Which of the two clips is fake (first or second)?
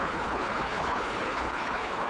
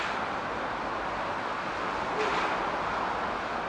first